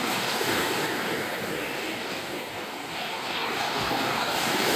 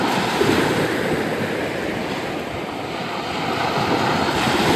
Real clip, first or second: second